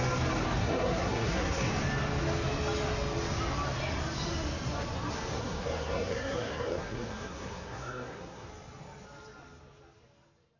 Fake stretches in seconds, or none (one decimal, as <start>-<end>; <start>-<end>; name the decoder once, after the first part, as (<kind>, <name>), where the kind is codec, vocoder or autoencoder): 0.6-1.7 (codec, SNAC); 5.3-8.5